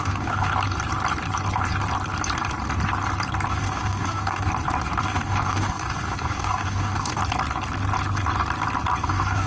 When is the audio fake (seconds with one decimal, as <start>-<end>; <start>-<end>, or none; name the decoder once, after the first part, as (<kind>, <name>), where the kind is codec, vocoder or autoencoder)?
0.0-0.5 (codec, DAC); 3.5-4.5; 5.0-7.2; 9.0-9.5